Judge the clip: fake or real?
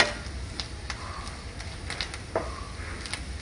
real